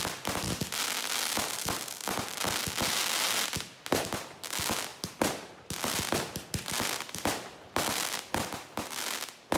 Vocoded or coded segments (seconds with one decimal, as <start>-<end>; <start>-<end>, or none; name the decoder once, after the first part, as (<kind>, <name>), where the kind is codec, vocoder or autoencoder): none